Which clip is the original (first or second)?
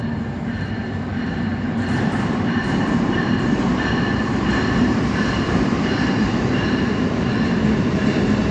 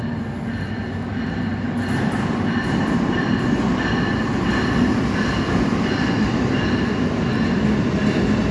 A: second